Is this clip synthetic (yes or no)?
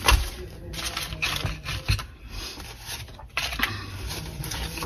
no